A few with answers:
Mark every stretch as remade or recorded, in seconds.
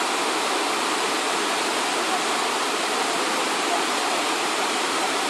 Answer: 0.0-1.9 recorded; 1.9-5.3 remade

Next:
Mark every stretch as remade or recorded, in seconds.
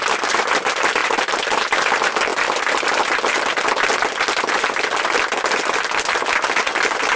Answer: 0.0-1.0 recorded; 1.0-1.8 remade; 1.8-7.2 recorded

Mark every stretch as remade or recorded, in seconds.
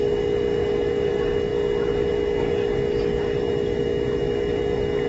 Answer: 0.0-5.1 recorded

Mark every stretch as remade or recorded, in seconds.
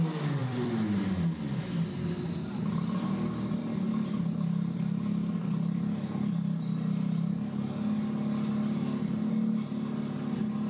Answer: 0.0-0.4 recorded; 0.4-1.1 remade; 1.1-10.7 recorded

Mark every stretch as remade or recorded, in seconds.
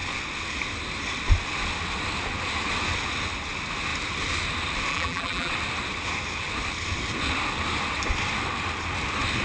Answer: 0.0-4.9 recorded; 4.9-5.5 remade; 5.5-9.4 recorded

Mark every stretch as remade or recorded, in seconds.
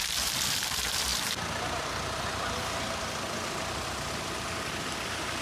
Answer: 0.0-5.4 remade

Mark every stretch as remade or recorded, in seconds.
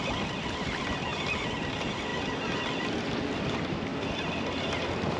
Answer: 0.0-1.1 remade; 1.1-1.6 recorded; 1.6-2.1 remade; 2.1-3.3 recorded; 3.3-3.9 remade; 3.9-4.7 recorded; 4.7-5.2 remade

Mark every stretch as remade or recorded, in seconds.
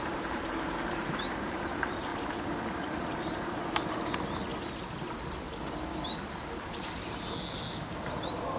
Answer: 0.0-2.1 remade; 2.1-2.7 recorded; 2.7-4.5 remade; 4.5-8.0 recorded; 8.0-8.6 remade